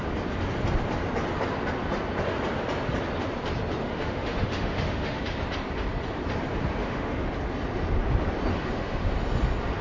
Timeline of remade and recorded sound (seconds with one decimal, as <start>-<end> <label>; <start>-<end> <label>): 0.0-3.8 recorded; 3.8-5.2 remade; 5.2-6.8 recorded; 6.8-7.3 remade; 7.3-8.5 recorded; 8.5-9.1 remade; 9.1-9.8 recorded